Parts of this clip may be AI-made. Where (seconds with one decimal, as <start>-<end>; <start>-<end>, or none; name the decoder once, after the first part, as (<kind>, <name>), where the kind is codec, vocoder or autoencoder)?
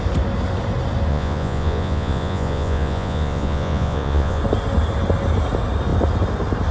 1.1-4.4 (vocoder, Vocos)